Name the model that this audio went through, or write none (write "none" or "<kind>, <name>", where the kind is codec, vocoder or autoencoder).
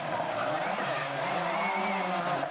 none